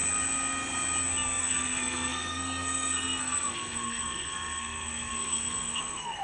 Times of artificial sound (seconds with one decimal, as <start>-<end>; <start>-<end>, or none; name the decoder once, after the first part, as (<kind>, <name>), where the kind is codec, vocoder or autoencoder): 1.4-6.2 (codec, SNAC)